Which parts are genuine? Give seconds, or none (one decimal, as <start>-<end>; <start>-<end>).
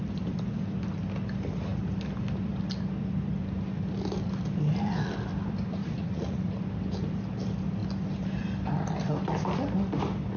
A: 0.0-5.8; 6.5-10.4